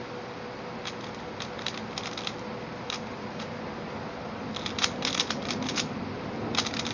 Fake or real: real